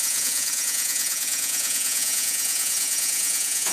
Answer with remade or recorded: remade